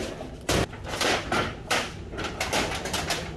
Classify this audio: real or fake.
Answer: real